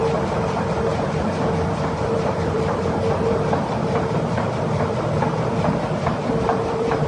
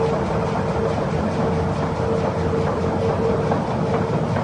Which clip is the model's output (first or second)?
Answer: first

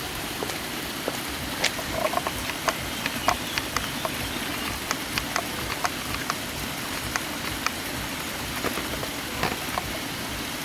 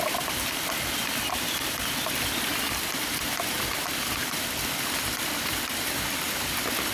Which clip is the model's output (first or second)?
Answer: second